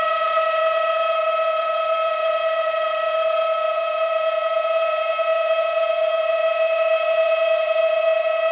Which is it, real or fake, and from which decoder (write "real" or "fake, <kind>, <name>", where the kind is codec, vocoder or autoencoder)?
fake, vocoder, HiFi-GAN